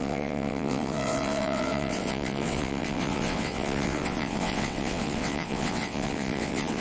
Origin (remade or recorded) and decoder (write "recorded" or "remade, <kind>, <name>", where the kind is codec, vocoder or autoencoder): remade, vocoder, WaveNeXt